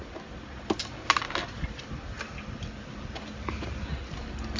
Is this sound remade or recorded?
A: recorded